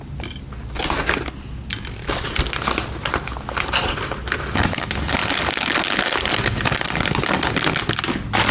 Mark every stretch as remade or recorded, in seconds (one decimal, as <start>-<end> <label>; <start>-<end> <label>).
0.0-8.5 recorded